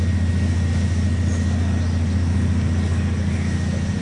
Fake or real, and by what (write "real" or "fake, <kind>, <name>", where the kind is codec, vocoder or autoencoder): real